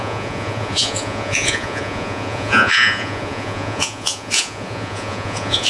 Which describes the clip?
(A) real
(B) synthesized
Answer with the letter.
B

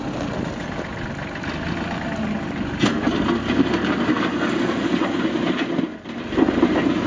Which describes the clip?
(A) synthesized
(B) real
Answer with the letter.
B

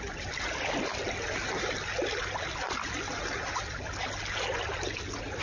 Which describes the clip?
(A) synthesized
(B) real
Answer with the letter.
B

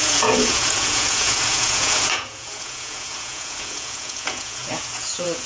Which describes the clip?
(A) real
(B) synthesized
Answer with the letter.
B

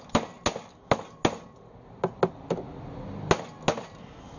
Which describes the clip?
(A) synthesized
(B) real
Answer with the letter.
B